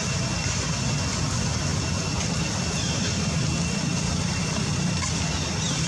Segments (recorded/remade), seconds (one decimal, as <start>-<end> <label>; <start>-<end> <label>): 0.0-5.9 recorded